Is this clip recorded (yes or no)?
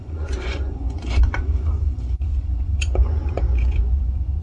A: no